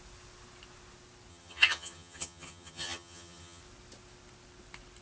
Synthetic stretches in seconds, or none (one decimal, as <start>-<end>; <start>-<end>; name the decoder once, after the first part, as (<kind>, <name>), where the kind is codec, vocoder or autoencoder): 1.3-3.6 (vocoder, HiFi-GAN)